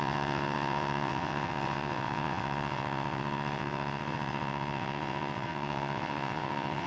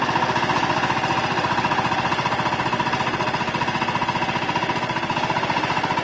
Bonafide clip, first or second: second